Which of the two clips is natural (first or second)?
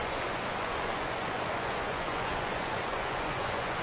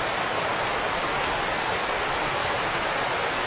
second